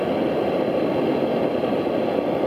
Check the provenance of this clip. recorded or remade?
recorded